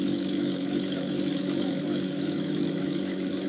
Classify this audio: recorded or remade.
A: remade